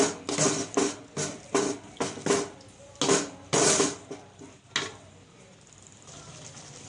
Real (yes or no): yes